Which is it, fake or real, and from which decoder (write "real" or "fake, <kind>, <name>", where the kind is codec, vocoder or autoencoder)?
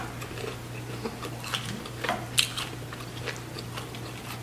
real